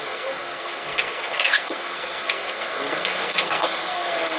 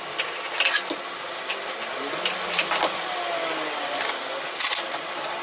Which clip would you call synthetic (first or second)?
first